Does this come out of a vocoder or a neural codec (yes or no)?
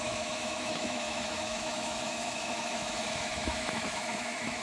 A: yes